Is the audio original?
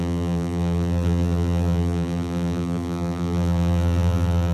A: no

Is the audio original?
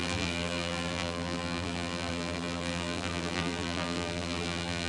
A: no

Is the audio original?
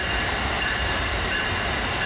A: yes